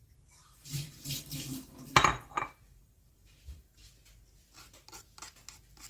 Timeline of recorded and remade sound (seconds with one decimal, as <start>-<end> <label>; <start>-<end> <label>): 0.0-0.4 recorded; 0.4-3.9 remade; 3.9-5.9 recorded